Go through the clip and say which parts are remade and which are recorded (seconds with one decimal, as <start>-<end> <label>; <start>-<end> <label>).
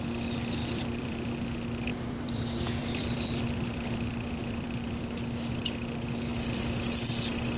0.0-0.6 recorded; 0.6-1.3 remade; 1.3-1.9 recorded; 1.9-5.5 remade; 5.5-7.6 recorded